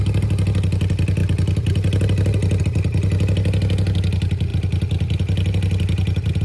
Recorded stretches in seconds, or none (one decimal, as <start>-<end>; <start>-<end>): 0.0-6.4